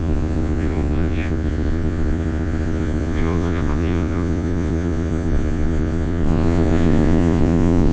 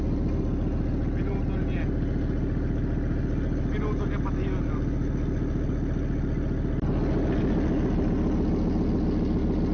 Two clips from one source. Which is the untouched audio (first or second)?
second